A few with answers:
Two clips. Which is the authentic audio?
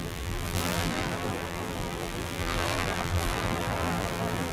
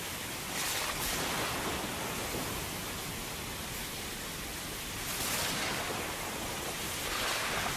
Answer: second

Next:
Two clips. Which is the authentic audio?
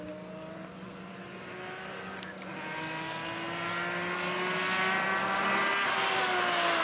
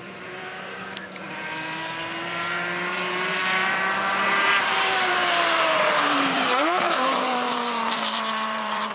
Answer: first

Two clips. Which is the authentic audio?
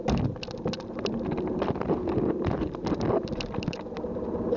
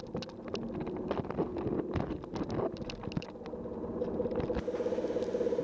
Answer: second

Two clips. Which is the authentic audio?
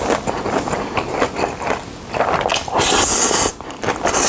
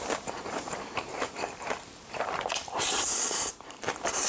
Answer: first